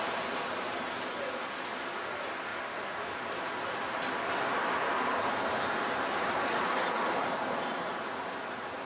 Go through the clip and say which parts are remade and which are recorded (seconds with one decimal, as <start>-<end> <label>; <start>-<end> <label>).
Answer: 0.0-8.9 recorded